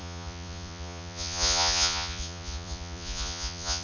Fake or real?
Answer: fake